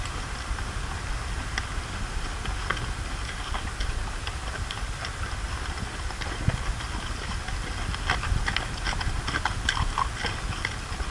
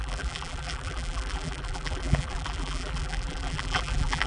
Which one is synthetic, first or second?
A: second